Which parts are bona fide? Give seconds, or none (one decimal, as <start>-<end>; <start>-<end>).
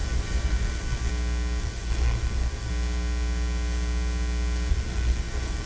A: 1.1-1.6; 2.7-4.7